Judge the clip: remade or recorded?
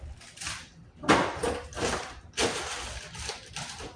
recorded